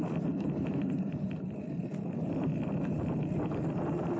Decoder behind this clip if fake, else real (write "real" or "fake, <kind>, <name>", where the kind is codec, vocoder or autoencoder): real